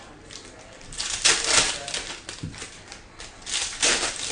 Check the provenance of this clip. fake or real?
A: real